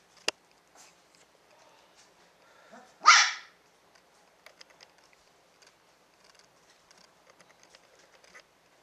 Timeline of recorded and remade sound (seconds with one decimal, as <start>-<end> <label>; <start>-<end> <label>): 0.0-8.8 recorded

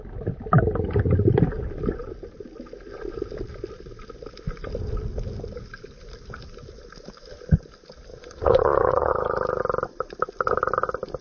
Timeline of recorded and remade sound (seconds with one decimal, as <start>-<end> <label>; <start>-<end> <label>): 0.0-8.1 recorded; 8.1-9.1 remade; 9.1-11.2 recorded

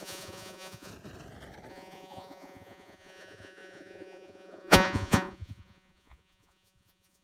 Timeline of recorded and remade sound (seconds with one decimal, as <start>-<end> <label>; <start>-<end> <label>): 0.0-0.9 remade; 0.9-1.7 recorded; 1.7-7.2 remade